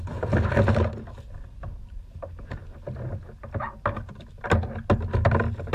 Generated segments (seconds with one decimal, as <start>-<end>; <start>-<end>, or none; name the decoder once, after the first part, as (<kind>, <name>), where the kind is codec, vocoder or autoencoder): none